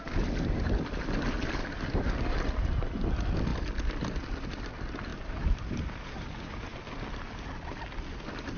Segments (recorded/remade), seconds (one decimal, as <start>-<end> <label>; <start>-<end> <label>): 0.0-5.1 recorded; 5.1-6.1 remade; 6.1-8.6 recorded